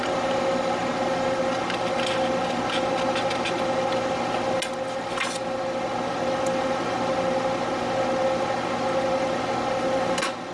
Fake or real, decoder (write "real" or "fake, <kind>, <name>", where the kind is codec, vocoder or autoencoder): real